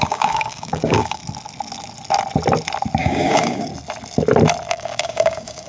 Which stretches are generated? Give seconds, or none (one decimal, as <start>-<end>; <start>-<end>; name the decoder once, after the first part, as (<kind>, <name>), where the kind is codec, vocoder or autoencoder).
0.0-1.2 (codec, DAC); 3.0-3.7; 4.7-5.7